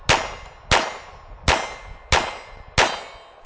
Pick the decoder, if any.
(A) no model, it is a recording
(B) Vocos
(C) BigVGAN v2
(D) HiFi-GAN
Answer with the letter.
A